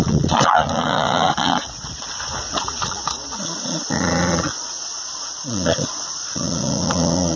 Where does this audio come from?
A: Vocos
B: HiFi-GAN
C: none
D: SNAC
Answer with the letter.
A